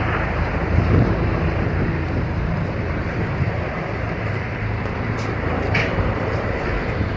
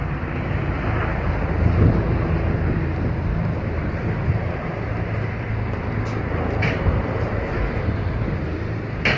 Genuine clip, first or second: second